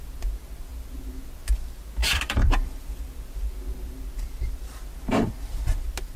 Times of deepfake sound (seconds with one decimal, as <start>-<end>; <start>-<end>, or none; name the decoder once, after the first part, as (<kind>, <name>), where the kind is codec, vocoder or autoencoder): 2.0-2.8 (vocoder, BigVGAN v2)